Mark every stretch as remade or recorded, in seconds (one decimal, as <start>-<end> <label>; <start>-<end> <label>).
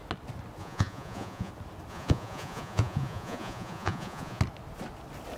0.0-0.6 recorded; 0.6-1.5 remade; 1.5-1.9 recorded; 1.9-4.4 remade; 4.4-5.4 recorded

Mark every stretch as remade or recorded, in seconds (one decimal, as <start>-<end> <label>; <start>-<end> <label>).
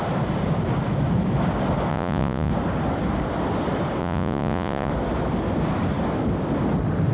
0.0-1.9 recorded; 1.9-2.5 remade; 2.5-4.0 recorded; 4.0-4.9 remade; 4.9-7.1 recorded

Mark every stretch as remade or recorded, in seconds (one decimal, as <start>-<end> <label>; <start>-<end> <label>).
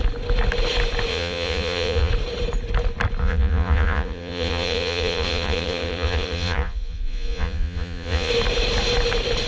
0.0-1.1 recorded; 1.1-2.1 remade; 2.1-3.2 recorded; 3.2-8.3 remade; 8.3-9.5 recorded